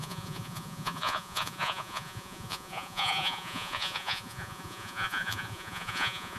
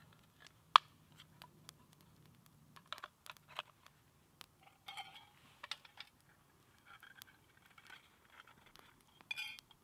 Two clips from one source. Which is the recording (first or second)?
second